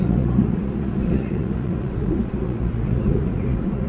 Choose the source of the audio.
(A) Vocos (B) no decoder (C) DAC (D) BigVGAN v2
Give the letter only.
A